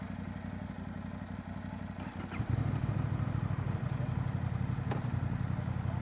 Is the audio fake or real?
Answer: real